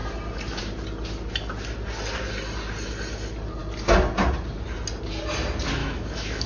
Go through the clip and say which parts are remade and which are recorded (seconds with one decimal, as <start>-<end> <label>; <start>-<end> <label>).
0.0-5.8 recorded; 5.8-6.5 remade